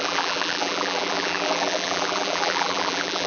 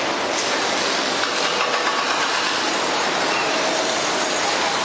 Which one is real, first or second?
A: second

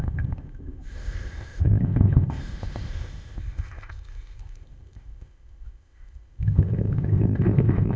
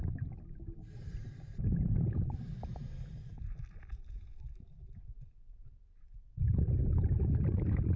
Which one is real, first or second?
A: second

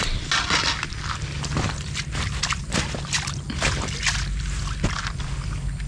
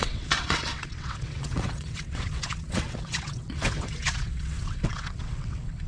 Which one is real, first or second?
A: first